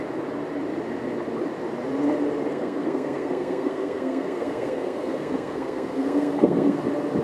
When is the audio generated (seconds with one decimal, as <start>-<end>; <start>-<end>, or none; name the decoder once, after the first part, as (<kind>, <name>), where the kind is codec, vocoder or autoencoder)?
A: 2.5-6.8 (codec, SNAC)